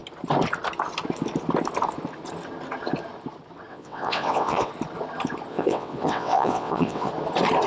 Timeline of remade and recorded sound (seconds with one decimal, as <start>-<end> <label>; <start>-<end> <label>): 0.0-3.7 recorded; 3.7-4.7 remade; 4.7-5.5 recorded; 5.5-7.1 remade; 7.1-7.7 recorded